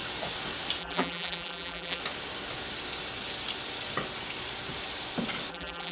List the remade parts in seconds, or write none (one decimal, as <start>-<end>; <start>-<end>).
0.8-2.0; 5.5-5.9